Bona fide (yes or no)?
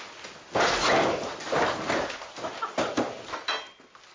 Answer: yes